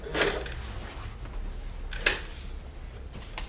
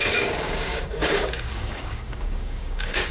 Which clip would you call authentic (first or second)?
first